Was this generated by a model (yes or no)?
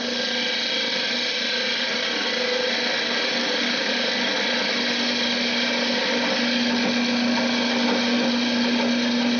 no